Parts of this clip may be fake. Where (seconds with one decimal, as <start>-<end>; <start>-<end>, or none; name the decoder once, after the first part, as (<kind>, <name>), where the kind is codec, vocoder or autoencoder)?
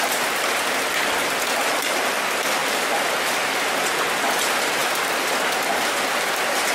none